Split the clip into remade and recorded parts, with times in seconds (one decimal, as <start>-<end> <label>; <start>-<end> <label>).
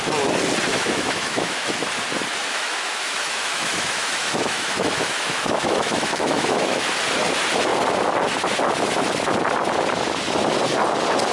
0.0-0.7 recorded; 0.7-1.8 remade; 1.8-2.4 recorded; 2.4-6.9 remade; 6.9-11.3 recorded